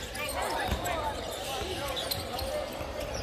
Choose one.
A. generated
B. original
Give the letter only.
B